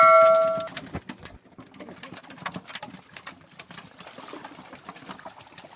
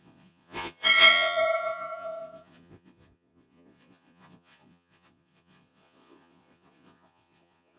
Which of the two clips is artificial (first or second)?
second